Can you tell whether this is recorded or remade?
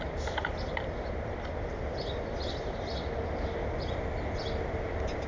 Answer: recorded